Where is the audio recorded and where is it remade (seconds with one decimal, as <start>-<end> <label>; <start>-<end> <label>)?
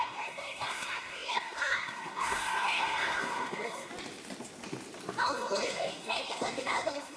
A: 0.0-3.9 remade; 3.9-5.2 recorded; 5.2-7.2 remade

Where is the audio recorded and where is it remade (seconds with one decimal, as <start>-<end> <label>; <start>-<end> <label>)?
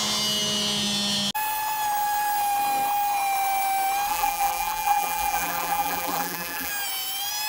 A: 0.0-4.1 recorded; 4.1-6.7 remade; 6.7-7.5 recorded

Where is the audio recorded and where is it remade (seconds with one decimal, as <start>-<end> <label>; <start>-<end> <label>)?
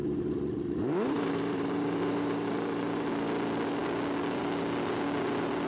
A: 0.0-3.1 remade; 3.1-5.7 recorded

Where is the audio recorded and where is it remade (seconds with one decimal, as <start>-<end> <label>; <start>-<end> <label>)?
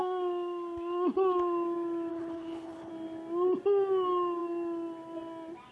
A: 0.0-2.1 recorded; 2.1-2.9 remade; 2.9-5.7 recorded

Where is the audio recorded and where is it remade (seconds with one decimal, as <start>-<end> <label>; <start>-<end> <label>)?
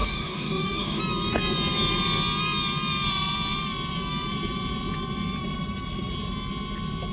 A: 0.0-1.0 remade; 1.0-7.1 recorded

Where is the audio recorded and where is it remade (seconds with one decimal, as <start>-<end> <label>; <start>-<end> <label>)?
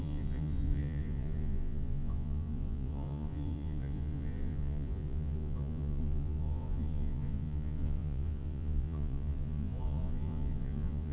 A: 0.0-11.1 remade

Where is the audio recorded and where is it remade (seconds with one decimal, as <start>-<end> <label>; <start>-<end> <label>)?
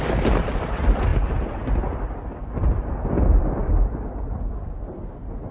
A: 0.0-5.5 remade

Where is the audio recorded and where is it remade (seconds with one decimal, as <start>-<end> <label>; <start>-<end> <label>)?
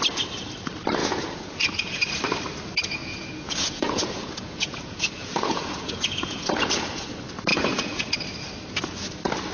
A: 0.0-1.0 recorded; 1.0-2.1 remade; 2.1-3.0 recorded; 3.0-7.1 remade; 7.1-7.5 recorded; 7.5-8.1 remade; 8.1-9.5 recorded